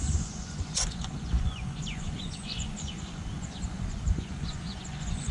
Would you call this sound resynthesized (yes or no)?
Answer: yes